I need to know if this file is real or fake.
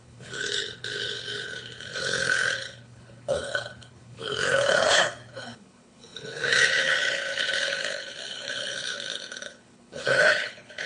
fake